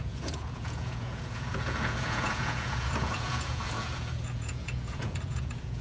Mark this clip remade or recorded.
remade